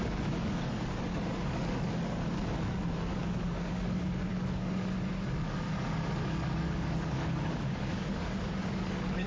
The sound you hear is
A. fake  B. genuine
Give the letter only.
A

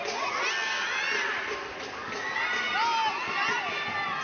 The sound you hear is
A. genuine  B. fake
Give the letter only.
A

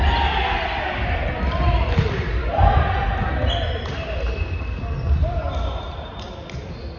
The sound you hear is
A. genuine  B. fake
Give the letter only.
A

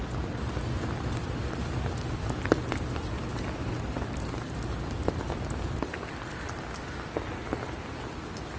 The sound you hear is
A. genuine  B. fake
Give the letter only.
A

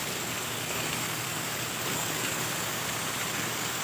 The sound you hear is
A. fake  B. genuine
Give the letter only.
A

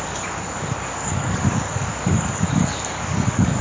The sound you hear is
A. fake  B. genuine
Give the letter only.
A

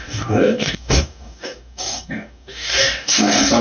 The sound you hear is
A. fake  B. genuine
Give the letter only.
A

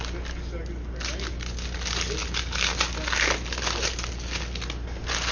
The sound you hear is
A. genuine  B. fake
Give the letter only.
A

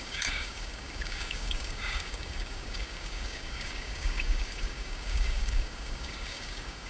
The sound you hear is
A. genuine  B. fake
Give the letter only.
B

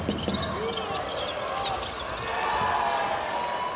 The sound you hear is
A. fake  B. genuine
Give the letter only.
B